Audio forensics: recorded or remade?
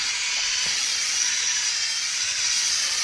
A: remade